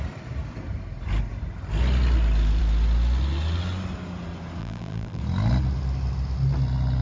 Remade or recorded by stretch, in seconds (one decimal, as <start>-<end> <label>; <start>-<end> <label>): 0.0-4.6 recorded; 4.6-5.2 remade; 5.2-7.0 recorded